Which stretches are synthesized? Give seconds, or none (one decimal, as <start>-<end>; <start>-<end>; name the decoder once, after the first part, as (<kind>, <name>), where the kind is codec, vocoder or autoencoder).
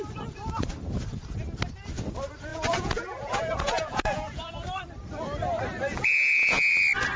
2.5-4.5 (vocoder, Vocos); 5.9-6.7